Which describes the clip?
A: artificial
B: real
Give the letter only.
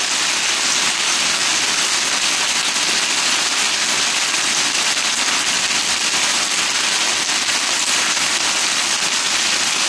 B